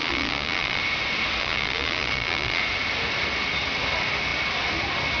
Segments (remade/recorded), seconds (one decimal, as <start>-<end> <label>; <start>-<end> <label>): 0.0-0.8 remade; 0.8-1.4 recorded; 1.4-2.6 remade; 2.6-5.2 recorded